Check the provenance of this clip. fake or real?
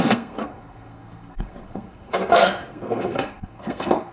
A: fake